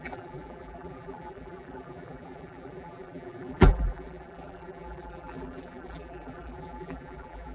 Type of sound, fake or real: fake